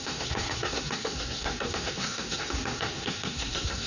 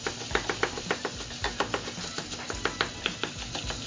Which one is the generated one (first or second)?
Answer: first